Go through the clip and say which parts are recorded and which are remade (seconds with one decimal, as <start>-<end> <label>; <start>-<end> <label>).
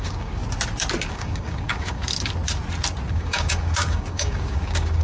0.0-0.4 remade; 0.4-1.1 recorded; 1.1-2.0 remade; 2.0-3.1 recorded; 3.1-5.0 remade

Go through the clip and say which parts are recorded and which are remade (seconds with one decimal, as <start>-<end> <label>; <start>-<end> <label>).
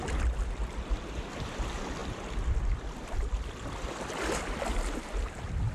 0.0-2.0 recorded; 2.0-2.9 remade; 2.9-5.7 recorded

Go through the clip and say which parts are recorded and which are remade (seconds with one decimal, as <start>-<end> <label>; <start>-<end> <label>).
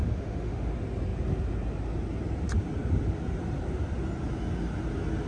0.0-0.7 remade; 0.7-5.3 recorded